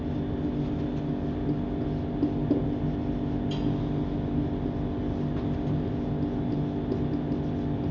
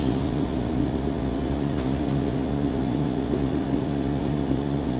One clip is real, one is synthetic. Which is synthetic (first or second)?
second